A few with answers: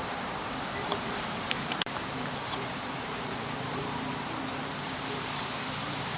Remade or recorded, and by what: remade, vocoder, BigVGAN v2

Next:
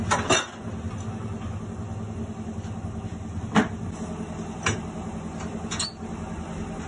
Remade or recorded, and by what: recorded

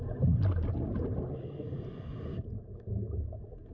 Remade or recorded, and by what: recorded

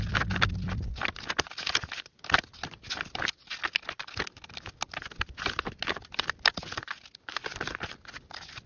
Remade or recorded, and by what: recorded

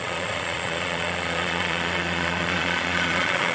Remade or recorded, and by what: remade, vocoder, Vocos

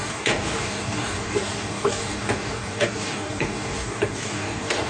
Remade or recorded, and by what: remade, codec, DAC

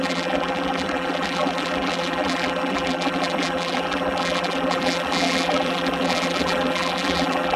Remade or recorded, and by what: remade, vocoder, BigVGAN v2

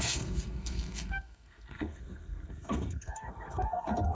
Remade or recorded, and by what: remade, codec, SNAC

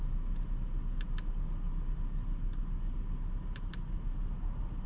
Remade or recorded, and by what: recorded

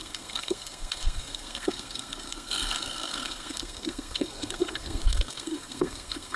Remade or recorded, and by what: remade, codec, SNAC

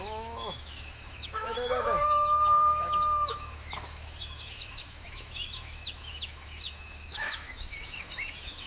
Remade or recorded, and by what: remade, autoencoder, DAC-VAE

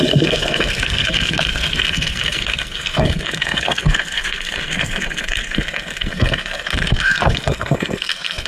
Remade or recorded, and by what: remade, codec, SNAC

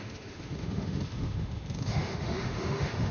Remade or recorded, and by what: remade, autoencoder, DAC-VAE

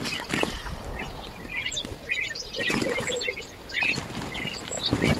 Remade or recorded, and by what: recorded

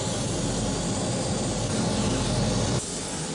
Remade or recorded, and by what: recorded